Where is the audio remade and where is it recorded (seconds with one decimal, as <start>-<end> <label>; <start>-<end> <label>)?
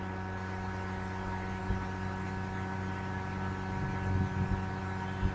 0.0-5.3 recorded